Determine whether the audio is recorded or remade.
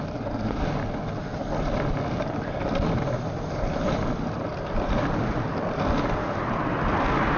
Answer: recorded